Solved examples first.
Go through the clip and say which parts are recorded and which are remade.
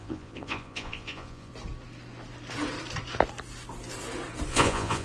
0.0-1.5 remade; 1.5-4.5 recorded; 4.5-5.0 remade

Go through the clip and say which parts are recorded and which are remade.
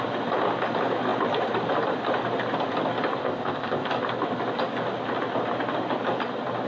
0.0-3.2 recorded; 3.2-3.9 remade; 3.9-6.7 recorded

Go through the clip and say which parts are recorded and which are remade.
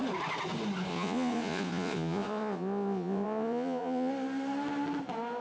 0.0-0.9 recorded; 0.9-4.1 remade; 4.1-5.4 recorded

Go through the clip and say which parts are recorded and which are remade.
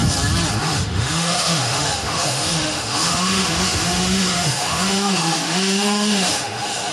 0.0-0.6 recorded; 0.6-6.9 remade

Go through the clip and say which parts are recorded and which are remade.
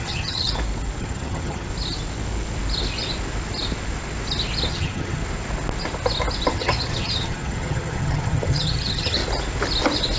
0.0-0.5 remade; 0.5-1.0 recorded; 1.0-1.7 remade; 1.7-4.7 recorded; 4.7-5.2 remade; 5.2-6.5 recorded; 6.5-9.2 remade; 9.2-10.2 recorded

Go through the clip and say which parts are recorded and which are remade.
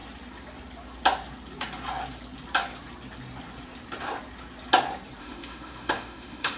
0.0-5.2 recorded; 5.2-6.6 remade